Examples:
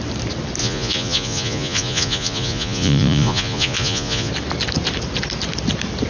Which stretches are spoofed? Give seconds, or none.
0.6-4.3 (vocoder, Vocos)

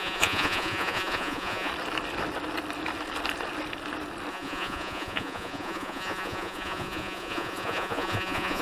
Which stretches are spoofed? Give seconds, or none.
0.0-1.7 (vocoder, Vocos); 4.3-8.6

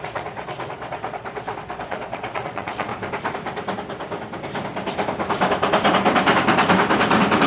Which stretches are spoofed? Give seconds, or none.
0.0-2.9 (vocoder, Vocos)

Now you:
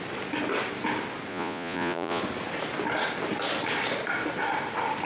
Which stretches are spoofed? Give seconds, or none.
1.3-2.2 (vocoder, Vocos)

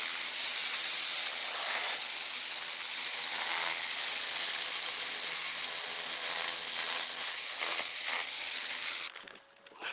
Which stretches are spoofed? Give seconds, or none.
1.4-2.0 (vocoder, Vocos)

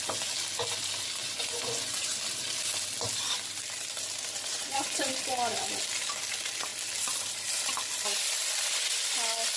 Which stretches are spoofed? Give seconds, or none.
1.2-2.2 (vocoder, Vocos); 4.5-5.1

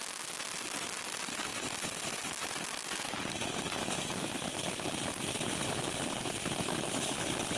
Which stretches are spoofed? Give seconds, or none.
none